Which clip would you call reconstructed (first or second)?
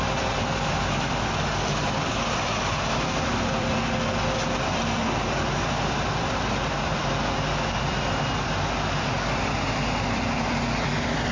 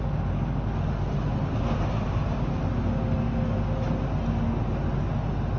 first